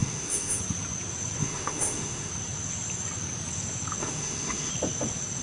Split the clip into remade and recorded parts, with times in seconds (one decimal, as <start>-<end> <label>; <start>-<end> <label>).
0.0-0.6 remade; 0.6-1.4 recorded; 1.4-2.3 remade; 2.3-4.0 recorded; 4.0-4.7 remade; 4.7-5.4 recorded

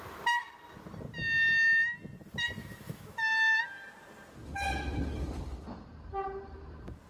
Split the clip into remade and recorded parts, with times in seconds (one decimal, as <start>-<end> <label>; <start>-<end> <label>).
0.0-2.6 recorded; 2.6-3.6 remade; 3.6-7.1 recorded

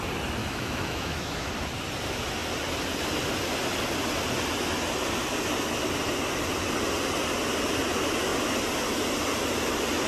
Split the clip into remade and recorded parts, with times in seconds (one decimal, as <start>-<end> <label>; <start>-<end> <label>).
0.0-0.4 recorded; 0.4-1.5 remade; 1.5-10.1 recorded

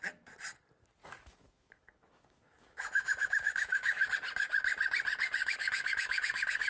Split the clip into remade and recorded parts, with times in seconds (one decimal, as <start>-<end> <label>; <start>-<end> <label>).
0.0-1.0 recorded; 1.0-4.1 remade; 4.1-5.4 recorded; 5.4-6.7 remade

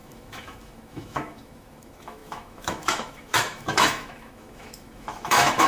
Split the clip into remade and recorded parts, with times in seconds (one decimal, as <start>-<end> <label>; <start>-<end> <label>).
0.0-5.7 remade

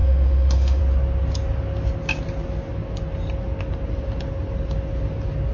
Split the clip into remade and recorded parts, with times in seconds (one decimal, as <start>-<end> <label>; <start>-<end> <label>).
0.0-0.8 remade; 0.8-5.5 recorded

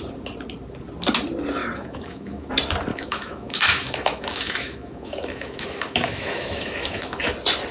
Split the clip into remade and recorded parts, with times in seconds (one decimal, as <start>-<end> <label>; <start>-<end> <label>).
0.0-1.6 recorded; 1.6-2.5 remade; 2.5-2.9 recorded; 2.9-7.3 remade; 7.3-7.7 recorded

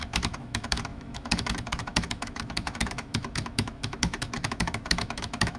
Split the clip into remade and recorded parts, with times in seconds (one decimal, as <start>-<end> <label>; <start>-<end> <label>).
0.0-5.6 remade